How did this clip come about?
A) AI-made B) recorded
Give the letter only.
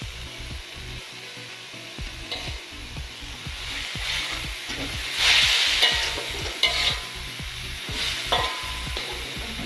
A